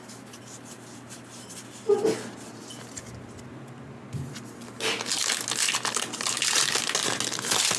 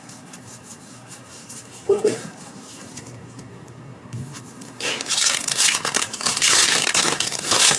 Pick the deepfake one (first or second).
second